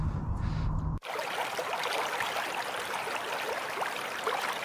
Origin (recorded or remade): recorded